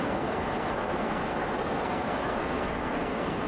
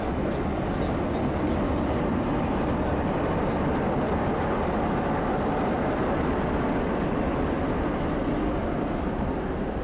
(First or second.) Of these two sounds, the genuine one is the second